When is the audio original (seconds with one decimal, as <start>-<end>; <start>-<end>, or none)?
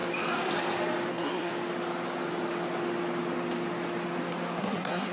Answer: 0.0-1.1; 1.5-4.6